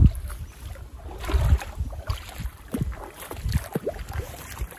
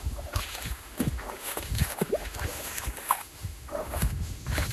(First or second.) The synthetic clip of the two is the second